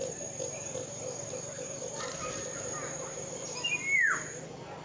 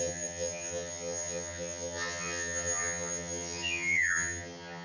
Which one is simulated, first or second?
second